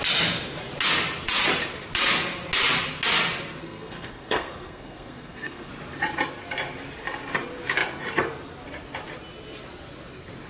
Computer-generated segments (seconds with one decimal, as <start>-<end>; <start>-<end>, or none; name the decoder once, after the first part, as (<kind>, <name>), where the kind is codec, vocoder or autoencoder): 3.6-5.7 (codec, SNAC)